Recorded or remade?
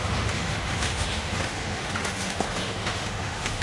remade